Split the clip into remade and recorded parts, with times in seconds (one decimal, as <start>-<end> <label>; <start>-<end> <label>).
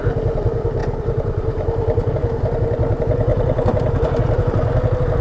0.0-0.8 recorded; 0.8-2.1 remade; 2.1-3.3 recorded; 3.3-4.2 remade; 4.2-5.2 recorded